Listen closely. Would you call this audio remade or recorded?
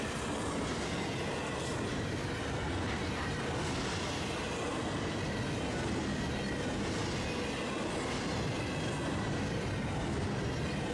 recorded